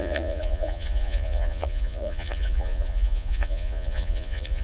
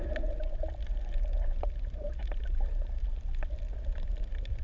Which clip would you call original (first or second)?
second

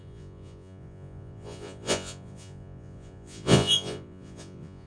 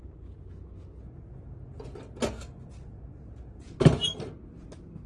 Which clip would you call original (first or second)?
second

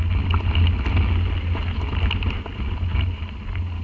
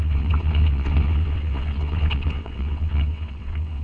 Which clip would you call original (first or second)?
first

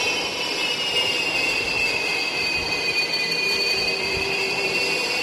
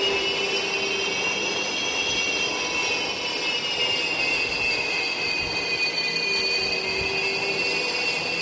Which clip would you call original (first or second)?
second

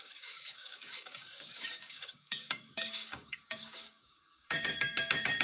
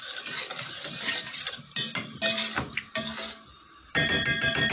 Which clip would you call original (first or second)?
second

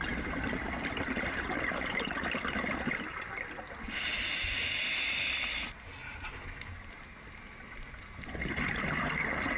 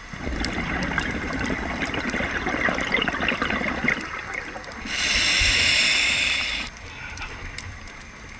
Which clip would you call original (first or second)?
first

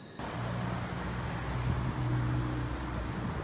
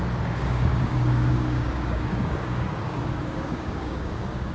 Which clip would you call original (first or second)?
first